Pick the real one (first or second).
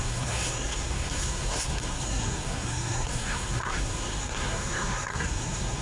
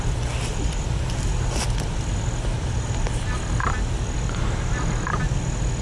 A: second